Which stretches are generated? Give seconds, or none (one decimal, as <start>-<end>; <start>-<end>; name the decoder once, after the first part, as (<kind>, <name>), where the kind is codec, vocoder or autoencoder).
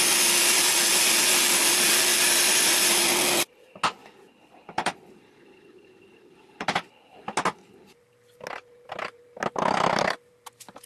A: 4.0-7.2 (vocoder, BigVGAN v2)